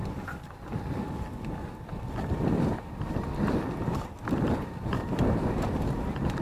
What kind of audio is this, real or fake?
real